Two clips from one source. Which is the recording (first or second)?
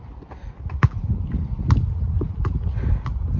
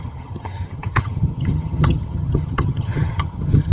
first